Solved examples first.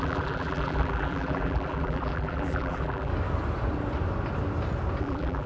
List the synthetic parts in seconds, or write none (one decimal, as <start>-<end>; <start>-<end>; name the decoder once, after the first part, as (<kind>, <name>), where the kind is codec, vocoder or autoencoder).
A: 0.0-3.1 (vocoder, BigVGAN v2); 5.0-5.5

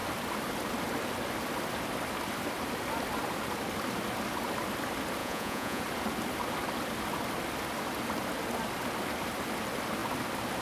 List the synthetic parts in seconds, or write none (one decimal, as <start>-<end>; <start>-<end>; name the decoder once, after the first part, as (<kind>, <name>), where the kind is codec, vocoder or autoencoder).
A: 5.2-5.8 (vocoder, Vocos)

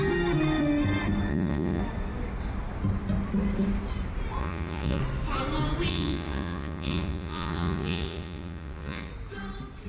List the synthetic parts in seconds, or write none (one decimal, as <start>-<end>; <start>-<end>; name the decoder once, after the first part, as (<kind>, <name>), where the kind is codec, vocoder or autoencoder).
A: 1.3-1.8 (vocoder, Vocos); 4.4-5.0; 5.9-9.1